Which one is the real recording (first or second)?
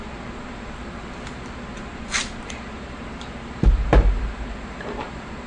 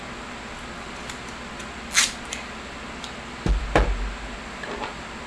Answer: second